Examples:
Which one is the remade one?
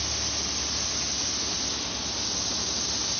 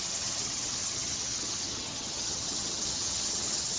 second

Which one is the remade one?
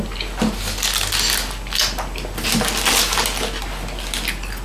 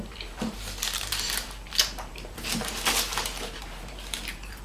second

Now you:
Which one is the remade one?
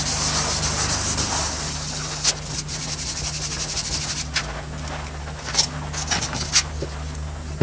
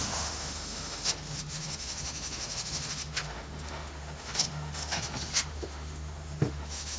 second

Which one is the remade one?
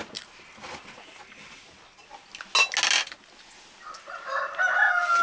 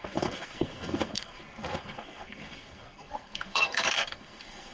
second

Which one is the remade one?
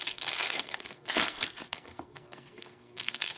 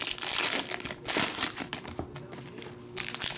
first